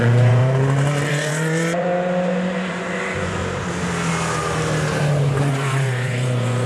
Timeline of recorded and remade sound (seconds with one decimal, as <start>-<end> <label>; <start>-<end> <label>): 0.0-0.4 remade; 0.4-1.1 recorded; 1.1-1.9 remade; 1.9-2.6 recorded; 2.6-3.4 remade; 3.4-5.5 recorded; 5.5-6.7 remade